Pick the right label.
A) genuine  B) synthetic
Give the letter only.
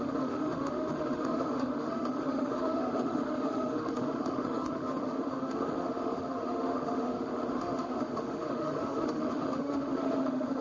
B